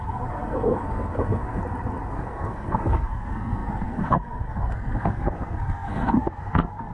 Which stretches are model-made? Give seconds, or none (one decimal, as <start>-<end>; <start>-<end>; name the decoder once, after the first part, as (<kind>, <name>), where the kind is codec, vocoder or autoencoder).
0.0-1.6 (codec, SNAC); 2.1-6.9